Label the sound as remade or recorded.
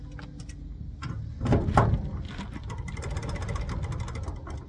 recorded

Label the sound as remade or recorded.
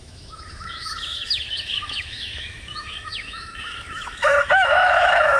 remade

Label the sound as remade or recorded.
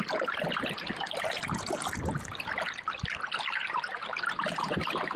recorded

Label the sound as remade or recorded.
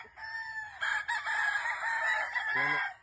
recorded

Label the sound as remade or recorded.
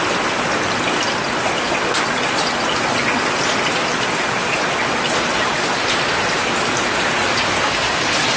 recorded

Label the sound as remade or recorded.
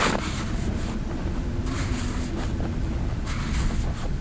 recorded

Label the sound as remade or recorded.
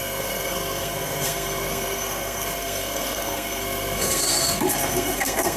remade